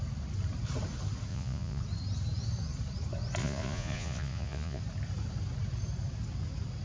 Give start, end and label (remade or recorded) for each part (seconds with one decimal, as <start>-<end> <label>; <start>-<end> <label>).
0.0-1.3 recorded; 1.3-1.8 remade; 1.8-3.4 recorded; 3.4-4.8 remade; 4.8-6.8 recorded